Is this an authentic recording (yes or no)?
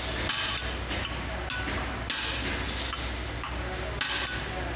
yes